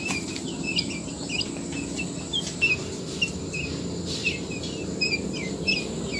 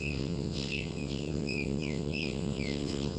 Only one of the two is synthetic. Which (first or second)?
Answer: second